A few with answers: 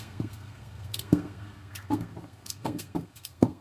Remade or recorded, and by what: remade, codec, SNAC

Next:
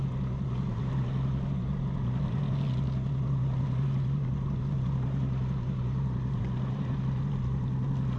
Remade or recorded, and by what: recorded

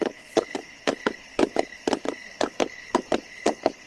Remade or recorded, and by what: remade, codec, HILCodec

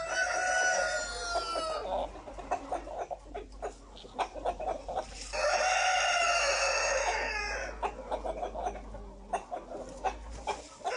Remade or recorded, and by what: recorded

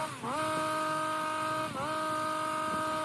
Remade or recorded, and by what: recorded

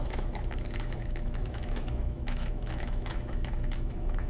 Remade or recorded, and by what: remade, autoencoder, DAC-VAE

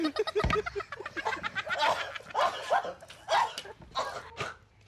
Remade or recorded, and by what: recorded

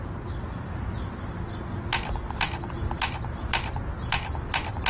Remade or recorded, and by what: recorded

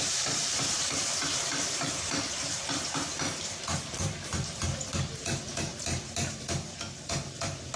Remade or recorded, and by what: remade, vocoder, BigVGAN v2